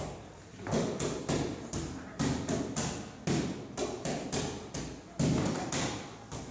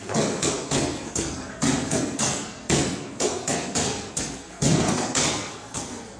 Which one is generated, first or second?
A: second